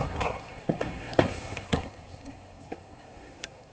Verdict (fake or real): fake